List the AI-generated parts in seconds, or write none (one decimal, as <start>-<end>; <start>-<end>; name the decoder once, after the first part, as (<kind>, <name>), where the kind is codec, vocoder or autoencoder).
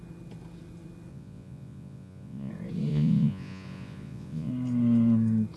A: 1.1-2.5 (vocoder, Vocos); 2.9-4.5